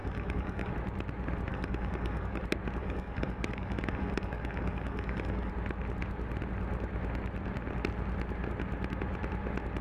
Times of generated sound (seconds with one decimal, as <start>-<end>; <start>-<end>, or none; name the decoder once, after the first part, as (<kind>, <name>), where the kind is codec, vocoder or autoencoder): 0.0-0.7 (codec, DAC); 1.5-2.4; 2.8-5.5